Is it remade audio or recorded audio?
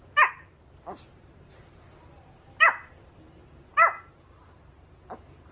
recorded